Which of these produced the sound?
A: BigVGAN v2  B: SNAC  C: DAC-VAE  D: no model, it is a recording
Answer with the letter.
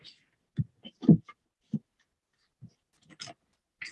D